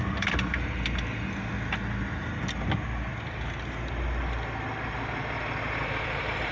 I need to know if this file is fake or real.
real